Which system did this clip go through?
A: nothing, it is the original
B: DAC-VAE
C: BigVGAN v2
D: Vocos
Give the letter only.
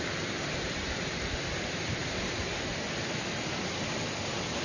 C